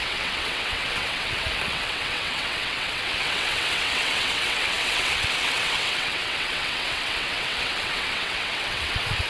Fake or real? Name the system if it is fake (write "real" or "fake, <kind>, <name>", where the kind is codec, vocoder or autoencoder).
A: fake, vocoder, WaveNeXt